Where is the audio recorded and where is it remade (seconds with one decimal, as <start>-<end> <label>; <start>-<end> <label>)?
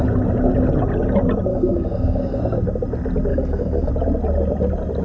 0.0-1.5 recorded; 1.5-2.4 remade; 2.4-3.3 recorded; 3.3-3.9 remade; 3.9-5.0 recorded